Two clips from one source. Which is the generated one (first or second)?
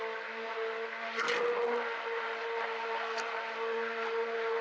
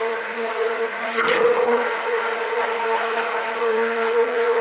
second